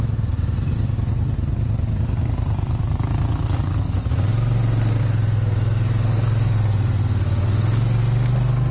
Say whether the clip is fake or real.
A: real